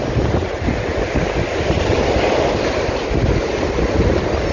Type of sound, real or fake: real